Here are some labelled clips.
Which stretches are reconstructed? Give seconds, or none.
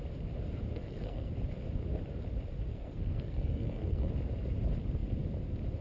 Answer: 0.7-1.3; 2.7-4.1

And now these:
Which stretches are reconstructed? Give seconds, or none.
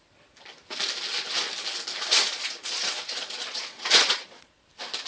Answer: 2.1-4.6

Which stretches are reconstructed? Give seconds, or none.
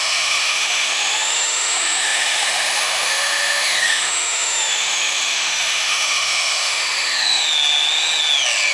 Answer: 0.0-7.4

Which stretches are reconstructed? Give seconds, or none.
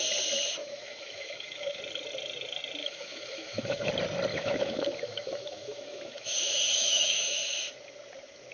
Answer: 0.6-1.8; 2.8-3.9; 4.3-7.7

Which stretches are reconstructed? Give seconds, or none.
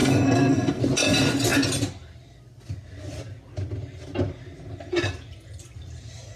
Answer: 0.0-0.8